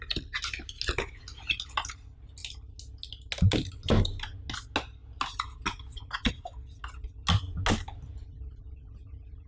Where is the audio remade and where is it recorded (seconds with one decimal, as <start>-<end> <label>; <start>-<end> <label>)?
0.0-9.5 recorded